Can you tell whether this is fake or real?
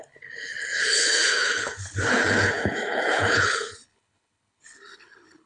fake